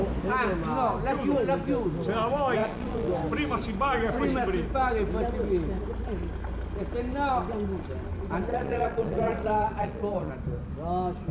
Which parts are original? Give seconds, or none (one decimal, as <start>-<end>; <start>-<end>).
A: 0.0-2.6; 3.1-8.5; 10.3-11.3